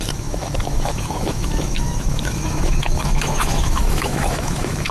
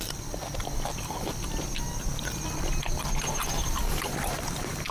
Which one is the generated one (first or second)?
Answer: first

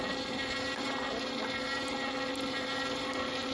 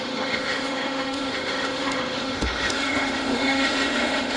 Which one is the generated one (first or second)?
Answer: second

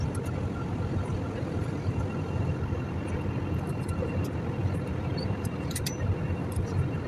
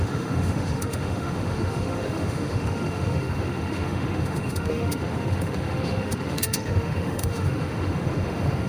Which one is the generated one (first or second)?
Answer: second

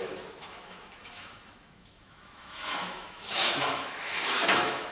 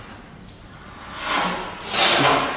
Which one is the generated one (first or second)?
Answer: first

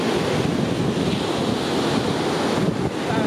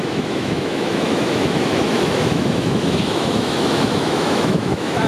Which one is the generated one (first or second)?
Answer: second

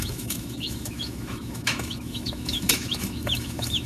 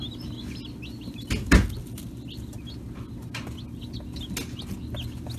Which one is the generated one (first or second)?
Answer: first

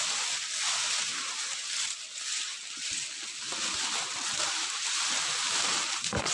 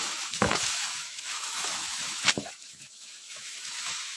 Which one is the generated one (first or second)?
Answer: second